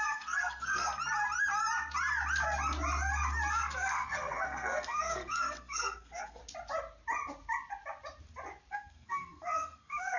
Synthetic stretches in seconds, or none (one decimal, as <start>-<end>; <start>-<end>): 0.0-0.9; 3.5-6.4; 8.7-10.2